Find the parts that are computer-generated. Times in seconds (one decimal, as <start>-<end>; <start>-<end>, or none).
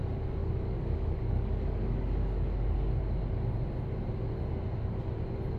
0.4-2.9